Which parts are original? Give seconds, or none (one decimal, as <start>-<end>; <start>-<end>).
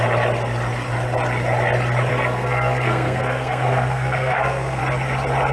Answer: 0.0-2.1; 4.8-5.5